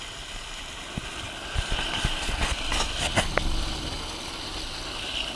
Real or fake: real